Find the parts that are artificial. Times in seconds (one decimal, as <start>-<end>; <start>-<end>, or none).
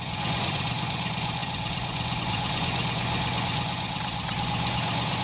0.0-5.2